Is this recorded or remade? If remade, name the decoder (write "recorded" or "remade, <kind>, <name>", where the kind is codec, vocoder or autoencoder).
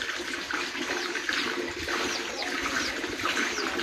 remade, vocoder, BigVGAN v2